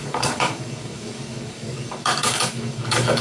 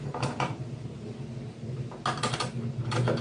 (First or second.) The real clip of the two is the second